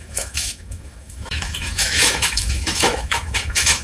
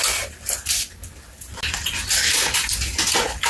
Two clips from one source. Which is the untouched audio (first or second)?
second